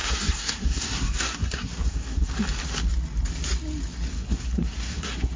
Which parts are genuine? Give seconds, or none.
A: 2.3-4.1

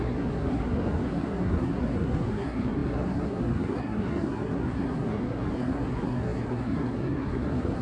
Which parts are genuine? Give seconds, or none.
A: none

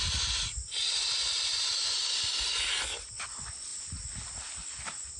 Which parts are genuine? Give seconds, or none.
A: 0.0-5.2

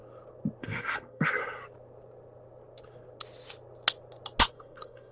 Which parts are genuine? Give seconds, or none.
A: 0.0-0.6; 1.4-4.5

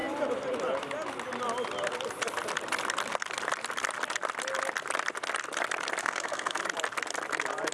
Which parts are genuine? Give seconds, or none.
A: 0.0-6.0; 6.6-7.7